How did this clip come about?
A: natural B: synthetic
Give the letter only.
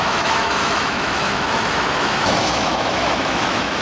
B